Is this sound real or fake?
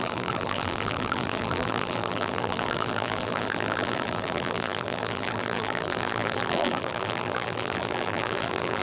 fake